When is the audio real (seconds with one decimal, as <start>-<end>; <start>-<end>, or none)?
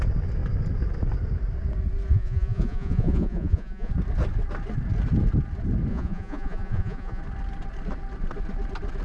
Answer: 0.0-2.1; 3.9-5.9; 7.2-9.0